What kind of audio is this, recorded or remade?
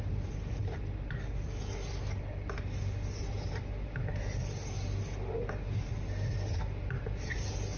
recorded